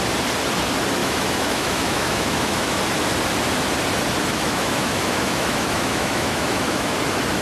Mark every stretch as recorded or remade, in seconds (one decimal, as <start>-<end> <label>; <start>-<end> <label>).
0.0-1.0 recorded; 1.0-2.8 remade; 2.8-4.3 recorded; 4.3-7.0 remade; 7.0-7.4 recorded